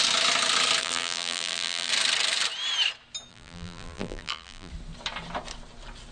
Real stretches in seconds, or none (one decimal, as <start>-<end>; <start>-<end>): 0.0-0.8; 1.9-3.3; 4.7-6.1